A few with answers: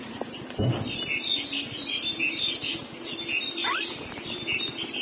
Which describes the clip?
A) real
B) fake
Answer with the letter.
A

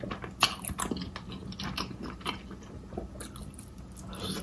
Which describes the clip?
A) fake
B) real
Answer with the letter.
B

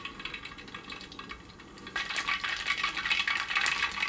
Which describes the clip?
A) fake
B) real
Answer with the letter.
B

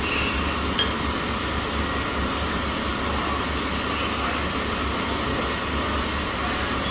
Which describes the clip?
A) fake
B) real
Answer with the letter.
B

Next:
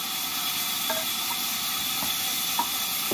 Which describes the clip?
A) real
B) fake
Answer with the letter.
A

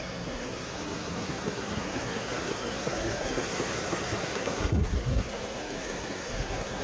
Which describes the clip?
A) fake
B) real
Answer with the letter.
A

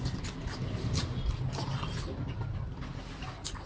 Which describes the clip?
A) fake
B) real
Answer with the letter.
B